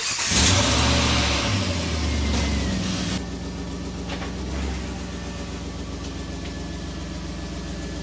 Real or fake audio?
real